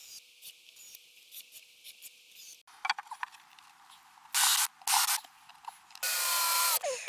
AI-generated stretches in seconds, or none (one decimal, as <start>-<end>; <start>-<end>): none